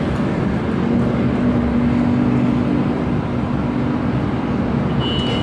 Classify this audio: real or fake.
real